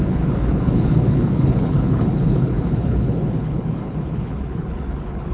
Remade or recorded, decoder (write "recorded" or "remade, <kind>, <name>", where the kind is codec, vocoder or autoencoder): remade, codec, HILCodec